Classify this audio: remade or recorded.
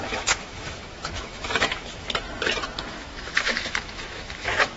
remade